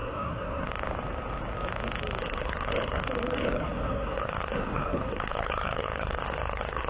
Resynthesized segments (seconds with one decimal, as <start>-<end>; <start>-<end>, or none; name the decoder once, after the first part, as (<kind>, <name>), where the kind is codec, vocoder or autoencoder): 0.0-0.7 (codec, SNAC); 2.2-3.0; 3.4-6.9